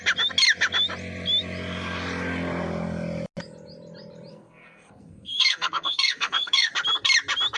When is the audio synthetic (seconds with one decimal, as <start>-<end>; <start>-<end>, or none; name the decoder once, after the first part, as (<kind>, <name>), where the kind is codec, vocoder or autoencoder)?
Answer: 4.3-6.7 (codec, SNAC)